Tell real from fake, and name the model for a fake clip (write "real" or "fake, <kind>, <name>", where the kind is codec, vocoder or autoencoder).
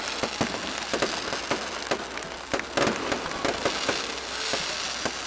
real